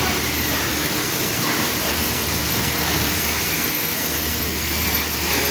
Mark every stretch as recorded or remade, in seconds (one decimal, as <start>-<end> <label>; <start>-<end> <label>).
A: 0.0-0.7 recorded; 0.7-1.4 remade; 1.4-1.9 recorded; 1.9-5.5 remade